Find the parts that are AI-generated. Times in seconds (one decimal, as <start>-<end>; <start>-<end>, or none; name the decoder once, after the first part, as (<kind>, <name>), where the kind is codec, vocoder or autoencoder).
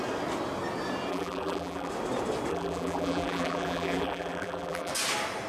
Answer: 1.1-1.9 (vocoder, BigVGAN v2); 2.5-4.9